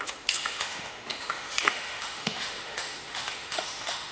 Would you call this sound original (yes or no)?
no